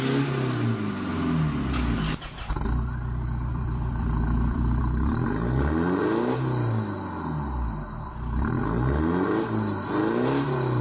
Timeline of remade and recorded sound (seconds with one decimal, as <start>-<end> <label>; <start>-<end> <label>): 0.0-3.5 recorded; 3.5-4.8 remade; 4.8-10.8 recorded